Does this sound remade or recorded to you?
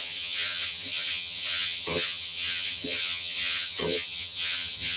remade